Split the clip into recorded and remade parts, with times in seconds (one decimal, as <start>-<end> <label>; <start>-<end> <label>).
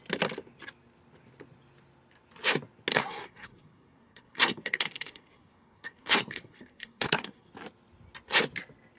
0.0-2.9 recorded; 2.9-7.5 remade; 7.5-9.0 recorded